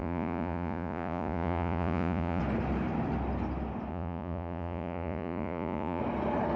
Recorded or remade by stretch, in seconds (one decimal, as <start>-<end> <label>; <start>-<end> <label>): 0.0-2.4 remade; 2.4-3.9 recorded; 3.9-6.0 remade; 6.0-6.6 recorded